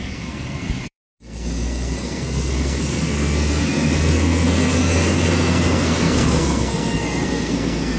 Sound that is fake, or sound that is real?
fake